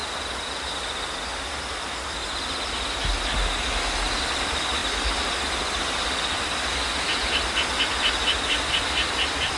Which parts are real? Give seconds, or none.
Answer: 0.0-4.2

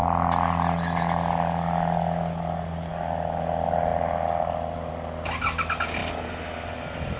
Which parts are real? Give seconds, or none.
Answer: 0.0-7.2

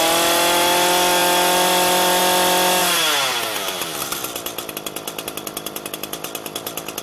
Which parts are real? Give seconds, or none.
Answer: 0.0-7.0